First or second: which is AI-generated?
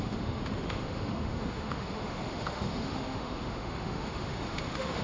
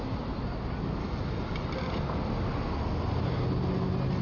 first